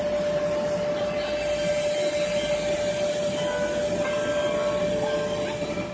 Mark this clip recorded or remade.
recorded